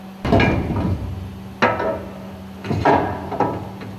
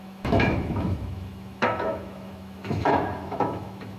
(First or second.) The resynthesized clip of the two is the second